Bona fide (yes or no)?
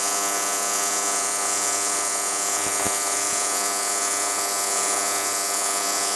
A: no